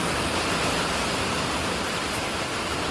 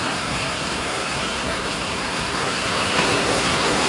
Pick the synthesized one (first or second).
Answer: second